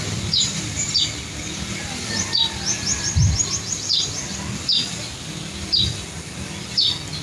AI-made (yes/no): no